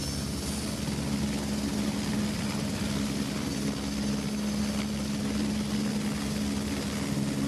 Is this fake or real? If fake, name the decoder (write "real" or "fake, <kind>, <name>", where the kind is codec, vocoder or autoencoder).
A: real